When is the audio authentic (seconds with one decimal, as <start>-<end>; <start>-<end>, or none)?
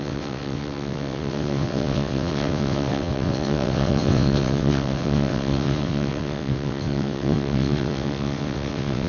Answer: none